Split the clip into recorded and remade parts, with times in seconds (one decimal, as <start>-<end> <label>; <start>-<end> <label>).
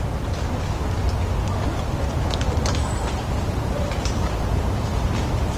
0.0-1.0 remade; 1.0-3.1 recorded; 3.1-5.6 remade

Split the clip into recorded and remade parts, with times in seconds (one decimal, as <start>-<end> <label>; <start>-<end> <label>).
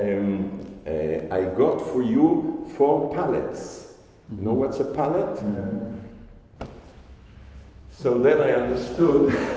0.0-3.6 recorded; 3.6-5.9 remade; 5.9-6.9 recorded; 6.9-8.8 remade; 8.8-9.6 recorded